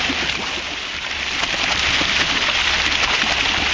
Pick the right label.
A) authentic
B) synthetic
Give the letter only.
A